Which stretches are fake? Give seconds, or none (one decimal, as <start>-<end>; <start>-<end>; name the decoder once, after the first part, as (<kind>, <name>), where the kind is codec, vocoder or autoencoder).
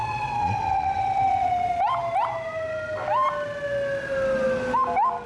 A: 0.0-1.5 (vocoder, WaveNeXt)